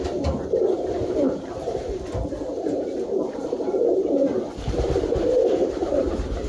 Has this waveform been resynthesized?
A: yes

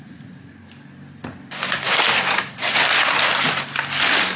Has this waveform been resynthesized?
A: no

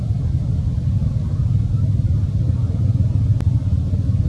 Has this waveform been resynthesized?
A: no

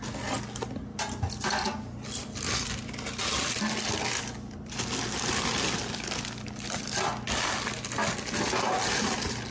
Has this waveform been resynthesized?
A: no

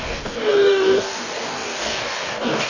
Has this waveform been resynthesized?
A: yes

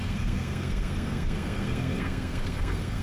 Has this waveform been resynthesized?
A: yes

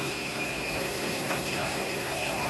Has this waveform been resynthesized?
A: yes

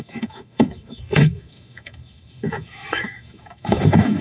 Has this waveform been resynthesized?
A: yes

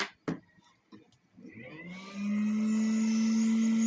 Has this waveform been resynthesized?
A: no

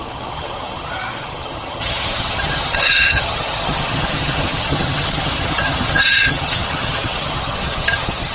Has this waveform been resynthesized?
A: yes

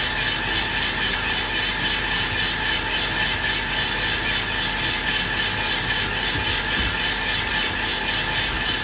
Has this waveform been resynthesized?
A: no